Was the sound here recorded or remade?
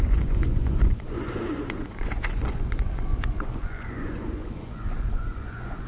remade